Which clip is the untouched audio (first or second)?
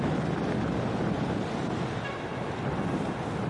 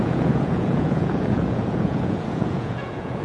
first